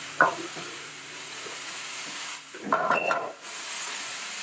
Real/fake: fake